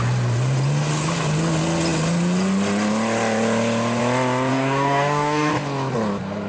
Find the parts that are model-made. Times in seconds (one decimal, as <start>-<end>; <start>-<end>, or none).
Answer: 4.5-5.5